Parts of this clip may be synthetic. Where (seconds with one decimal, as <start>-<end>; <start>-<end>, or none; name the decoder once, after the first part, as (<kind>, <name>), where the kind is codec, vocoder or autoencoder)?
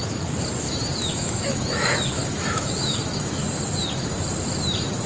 1.1-3.4 (autoencoder, DAC-VAE)